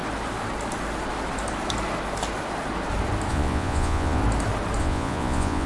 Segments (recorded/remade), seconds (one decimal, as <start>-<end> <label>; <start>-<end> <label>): 0.0-3.3 recorded; 3.3-4.2 remade; 4.2-4.8 recorded; 4.8-5.7 remade